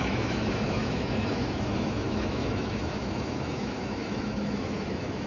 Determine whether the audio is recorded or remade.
remade